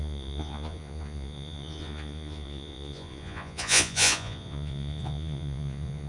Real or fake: fake